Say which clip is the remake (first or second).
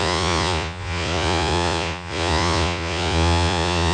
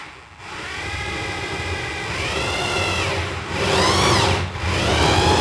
first